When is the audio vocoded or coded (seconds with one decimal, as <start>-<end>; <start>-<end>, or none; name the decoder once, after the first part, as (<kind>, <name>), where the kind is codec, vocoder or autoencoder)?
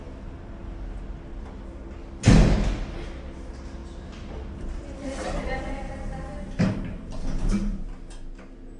3.8-5.6 (vocoder, BigVGAN v2)